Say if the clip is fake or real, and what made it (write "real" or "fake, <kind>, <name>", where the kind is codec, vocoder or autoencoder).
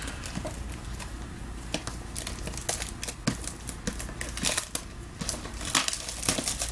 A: real